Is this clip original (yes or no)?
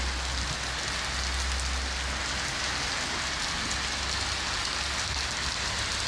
yes